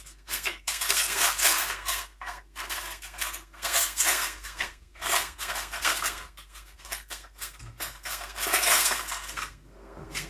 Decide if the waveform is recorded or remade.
remade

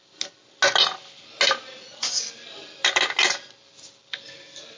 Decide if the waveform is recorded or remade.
recorded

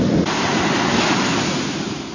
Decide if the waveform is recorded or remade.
recorded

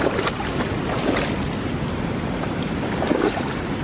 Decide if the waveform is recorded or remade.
recorded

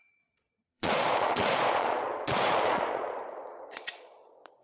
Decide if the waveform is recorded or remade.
remade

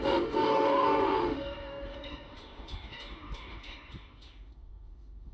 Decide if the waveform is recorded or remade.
remade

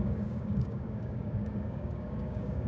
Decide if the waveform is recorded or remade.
remade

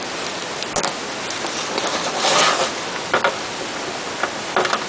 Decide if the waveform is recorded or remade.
recorded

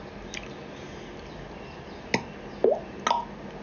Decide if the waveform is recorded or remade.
recorded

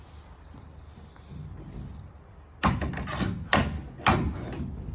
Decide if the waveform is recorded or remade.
recorded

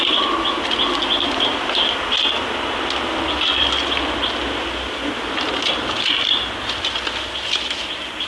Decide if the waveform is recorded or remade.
recorded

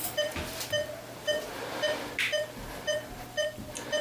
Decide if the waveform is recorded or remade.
recorded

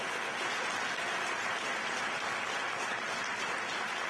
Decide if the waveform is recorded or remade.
recorded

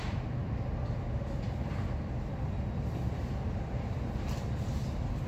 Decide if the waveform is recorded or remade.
recorded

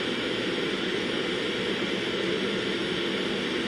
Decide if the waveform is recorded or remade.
recorded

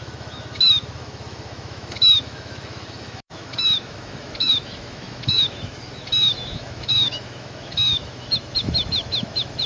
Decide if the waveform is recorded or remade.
remade